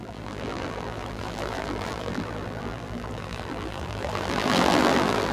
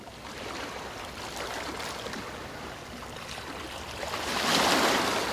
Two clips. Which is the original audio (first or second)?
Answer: second